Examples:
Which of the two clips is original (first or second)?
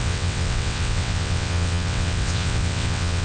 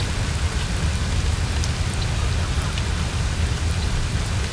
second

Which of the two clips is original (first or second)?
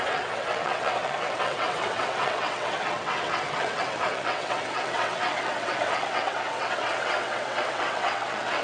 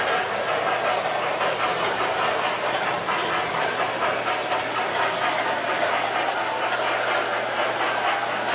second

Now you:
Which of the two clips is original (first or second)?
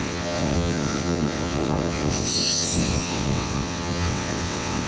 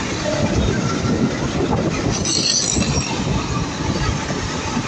second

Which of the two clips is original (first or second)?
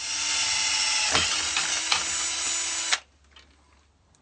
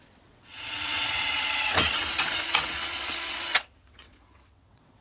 first